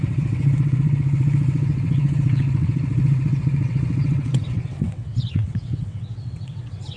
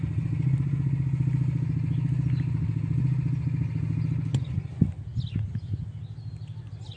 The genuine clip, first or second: second